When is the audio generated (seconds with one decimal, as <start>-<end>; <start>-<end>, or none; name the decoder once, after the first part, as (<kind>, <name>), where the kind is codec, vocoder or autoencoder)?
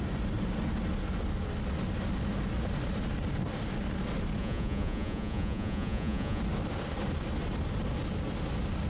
4.4-6.4 (vocoder, Vocos)